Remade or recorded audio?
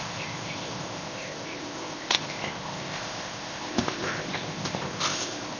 remade